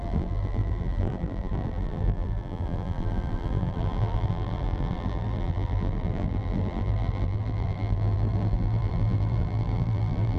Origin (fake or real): fake